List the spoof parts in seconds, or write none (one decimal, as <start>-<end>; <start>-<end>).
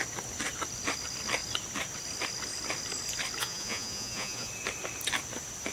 3.4-4.5